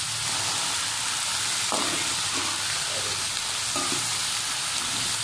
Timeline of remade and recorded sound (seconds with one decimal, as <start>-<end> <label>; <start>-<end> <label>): 0.0-5.2 recorded